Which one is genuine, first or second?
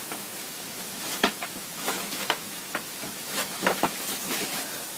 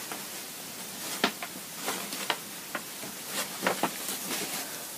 second